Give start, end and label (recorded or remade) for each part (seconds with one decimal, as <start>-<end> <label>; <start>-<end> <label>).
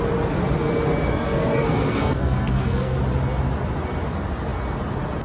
0.0-1.1 recorded; 1.1-3.0 remade; 3.0-5.2 recorded